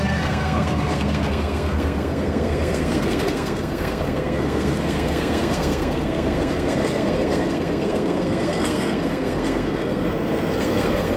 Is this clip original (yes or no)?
no